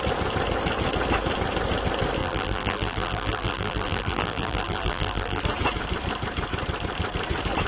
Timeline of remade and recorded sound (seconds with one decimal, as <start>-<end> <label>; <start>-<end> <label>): 0.0-2.2 recorded; 2.2-5.4 remade; 5.4-7.7 recorded